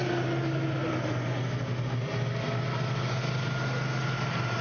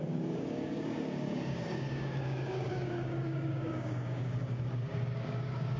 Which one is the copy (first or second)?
second